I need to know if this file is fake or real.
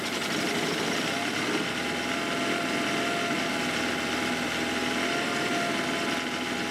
real